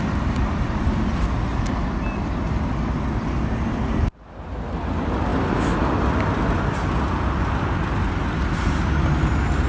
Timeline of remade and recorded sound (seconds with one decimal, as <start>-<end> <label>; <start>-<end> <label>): 0.0-9.7 recorded